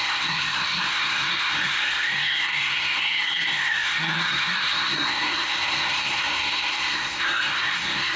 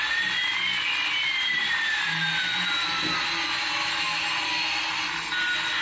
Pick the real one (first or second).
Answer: second